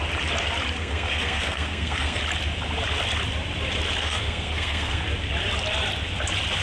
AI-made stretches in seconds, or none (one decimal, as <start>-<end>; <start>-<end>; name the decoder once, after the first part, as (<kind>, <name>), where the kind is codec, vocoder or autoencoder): 0.8-2.2 (codec, SNAC); 4.0-5.0